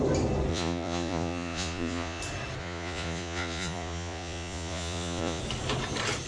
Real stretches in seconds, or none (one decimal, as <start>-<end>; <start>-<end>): 0.0-0.5; 2.2-2.6; 5.4-6.3